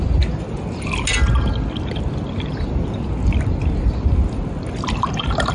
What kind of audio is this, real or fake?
real